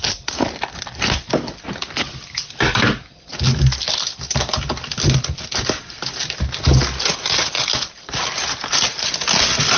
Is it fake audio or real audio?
real